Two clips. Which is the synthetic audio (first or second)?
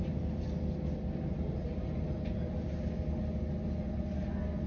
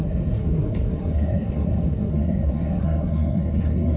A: second